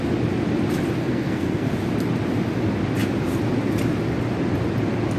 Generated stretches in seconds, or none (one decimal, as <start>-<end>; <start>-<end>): 1.0-1.7